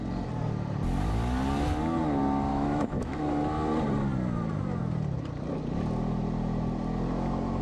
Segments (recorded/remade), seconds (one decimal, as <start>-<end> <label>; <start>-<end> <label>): 0.0-2.5 recorded; 2.5-3.2 remade; 3.2-7.6 recorded